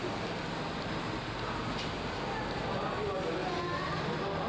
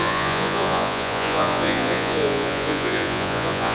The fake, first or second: second